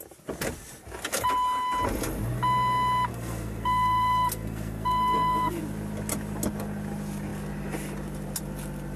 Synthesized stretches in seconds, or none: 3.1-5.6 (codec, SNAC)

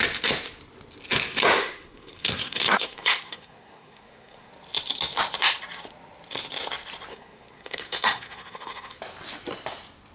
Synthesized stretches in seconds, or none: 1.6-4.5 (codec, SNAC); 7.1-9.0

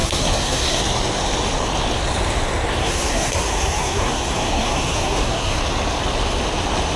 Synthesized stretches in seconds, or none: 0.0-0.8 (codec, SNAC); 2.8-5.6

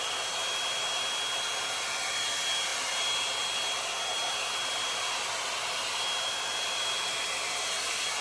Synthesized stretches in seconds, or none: none